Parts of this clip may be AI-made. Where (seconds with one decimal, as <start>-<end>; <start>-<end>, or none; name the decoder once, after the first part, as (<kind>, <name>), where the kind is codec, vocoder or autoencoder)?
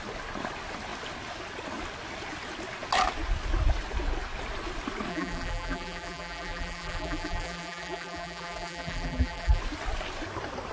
5.1-9.6 (vocoder, BigVGAN v2)